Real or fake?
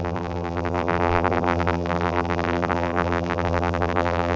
fake